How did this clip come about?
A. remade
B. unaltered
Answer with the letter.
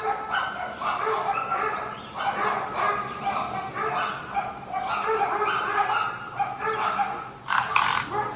B